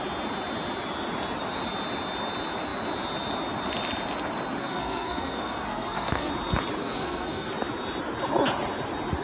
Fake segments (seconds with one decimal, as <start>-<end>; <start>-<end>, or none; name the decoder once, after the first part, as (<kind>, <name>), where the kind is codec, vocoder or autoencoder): 4.6-6.3 (codec, SNAC); 6.8-7.5